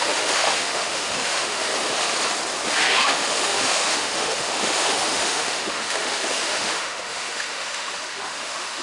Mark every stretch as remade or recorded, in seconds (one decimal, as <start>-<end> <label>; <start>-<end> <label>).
0.0-1.7 remade; 1.7-2.7 recorded; 2.7-8.8 remade